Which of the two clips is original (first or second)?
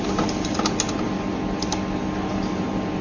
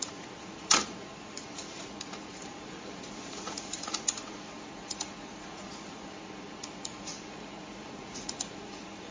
first